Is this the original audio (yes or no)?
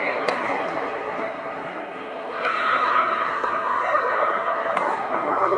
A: no